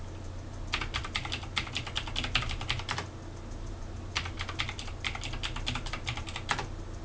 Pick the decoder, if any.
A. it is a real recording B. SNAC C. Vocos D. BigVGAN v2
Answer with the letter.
A